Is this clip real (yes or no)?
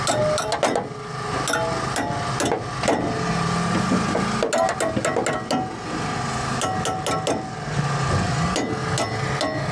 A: yes